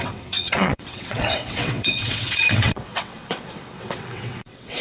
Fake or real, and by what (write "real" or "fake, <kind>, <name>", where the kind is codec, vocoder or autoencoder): fake, vocoder, WaveNeXt